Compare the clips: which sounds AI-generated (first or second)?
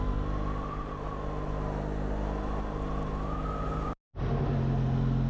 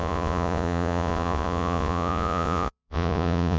second